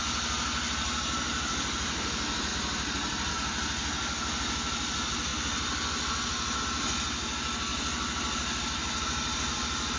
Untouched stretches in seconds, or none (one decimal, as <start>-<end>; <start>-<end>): 0.0-10.0